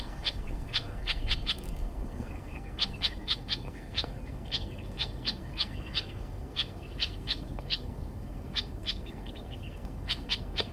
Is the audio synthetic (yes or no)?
yes